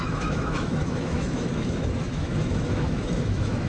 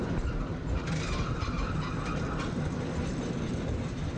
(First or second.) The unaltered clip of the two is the second